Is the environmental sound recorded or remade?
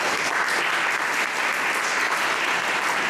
recorded